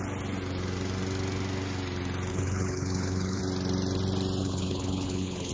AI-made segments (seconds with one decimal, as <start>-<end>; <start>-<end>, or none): 2.3-3.4; 4.4-5.5